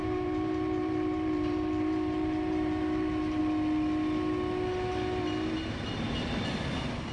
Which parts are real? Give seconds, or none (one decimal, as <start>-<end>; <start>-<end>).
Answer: 3.4-7.1